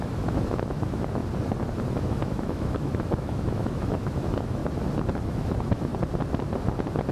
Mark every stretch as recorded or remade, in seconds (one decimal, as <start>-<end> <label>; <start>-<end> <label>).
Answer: 0.0-1.2 remade; 1.2-1.9 recorded; 1.9-4.6 remade; 4.6-5.3 recorded; 5.3-5.9 remade; 5.9-7.1 recorded